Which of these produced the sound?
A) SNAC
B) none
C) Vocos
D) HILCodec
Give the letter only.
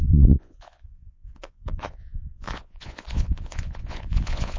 C